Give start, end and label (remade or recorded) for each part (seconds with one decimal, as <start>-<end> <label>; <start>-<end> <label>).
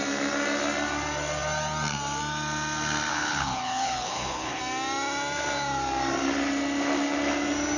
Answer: 0.0-3.1 recorded; 3.1-4.6 remade; 4.6-7.8 recorded